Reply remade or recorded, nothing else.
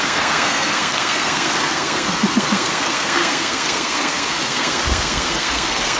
remade